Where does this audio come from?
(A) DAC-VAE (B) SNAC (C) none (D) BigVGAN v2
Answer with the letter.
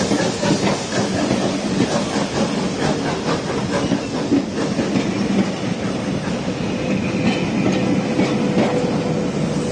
C